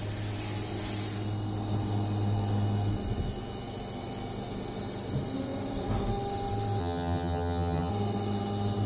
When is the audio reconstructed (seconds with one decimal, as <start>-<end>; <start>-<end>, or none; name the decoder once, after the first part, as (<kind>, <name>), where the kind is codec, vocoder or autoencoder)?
6.8-7.9 (vocoder, HiFi-GAN)